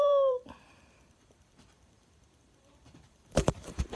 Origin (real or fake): fake